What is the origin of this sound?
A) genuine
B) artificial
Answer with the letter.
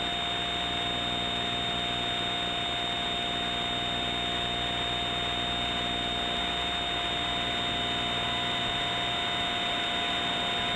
A